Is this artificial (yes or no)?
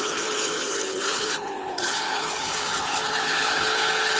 yes